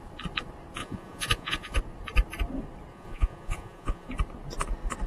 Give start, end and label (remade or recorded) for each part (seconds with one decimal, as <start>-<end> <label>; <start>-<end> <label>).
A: 0.0-0.8 recorded; 0.8-1.8 remade; 1.8-2.9 recorded; 2.9-4.1 remade; 4.1-5.1 recorded